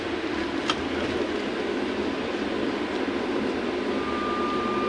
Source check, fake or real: real